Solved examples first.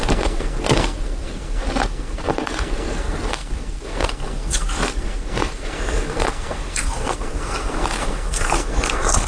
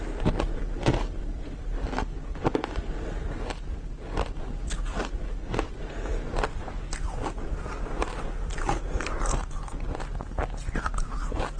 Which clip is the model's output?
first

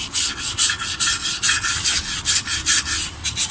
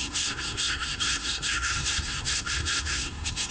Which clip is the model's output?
second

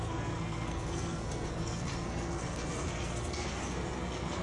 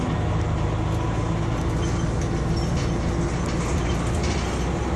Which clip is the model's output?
first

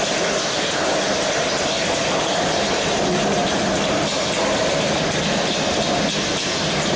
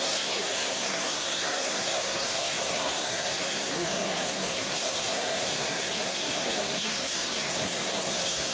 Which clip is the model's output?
second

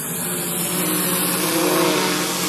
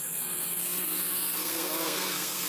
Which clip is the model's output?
second